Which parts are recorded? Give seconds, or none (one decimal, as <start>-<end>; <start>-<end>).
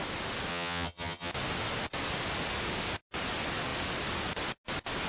0.0-0.5; 1.3-5.1